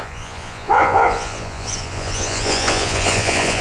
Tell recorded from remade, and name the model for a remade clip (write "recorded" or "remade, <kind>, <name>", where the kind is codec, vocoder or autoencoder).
remade, vocoder, Vocos